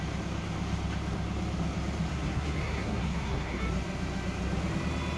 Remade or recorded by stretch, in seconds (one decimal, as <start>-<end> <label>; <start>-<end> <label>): 0.0-2.1 recorded; 2.1-3.6 remade; 3.6-5.2 recorded